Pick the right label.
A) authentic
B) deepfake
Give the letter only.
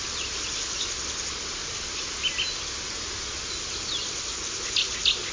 A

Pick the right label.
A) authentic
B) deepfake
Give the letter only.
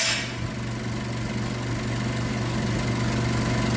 A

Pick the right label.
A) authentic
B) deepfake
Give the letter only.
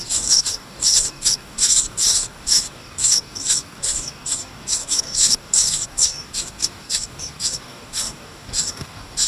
B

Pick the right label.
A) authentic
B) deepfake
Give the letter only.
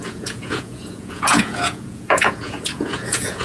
B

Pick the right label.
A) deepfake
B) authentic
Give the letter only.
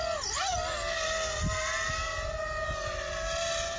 B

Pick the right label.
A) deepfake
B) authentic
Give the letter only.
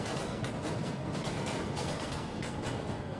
A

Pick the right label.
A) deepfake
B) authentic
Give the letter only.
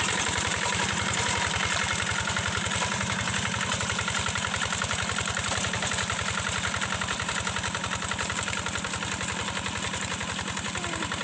A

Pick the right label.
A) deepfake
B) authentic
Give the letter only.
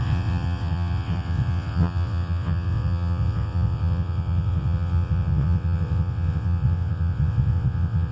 A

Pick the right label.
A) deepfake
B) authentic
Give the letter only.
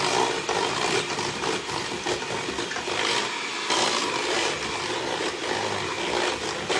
B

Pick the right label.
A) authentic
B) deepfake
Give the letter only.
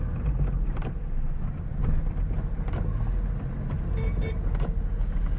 A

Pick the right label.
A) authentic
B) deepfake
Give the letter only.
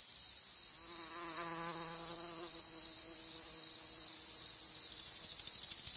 A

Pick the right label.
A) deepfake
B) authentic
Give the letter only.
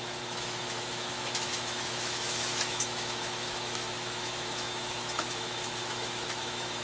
A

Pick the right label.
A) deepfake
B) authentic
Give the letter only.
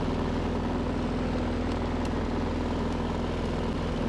B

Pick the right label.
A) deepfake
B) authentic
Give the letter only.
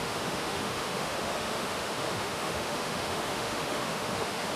A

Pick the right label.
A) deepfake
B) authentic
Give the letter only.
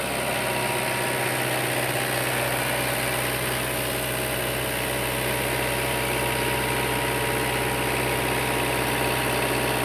B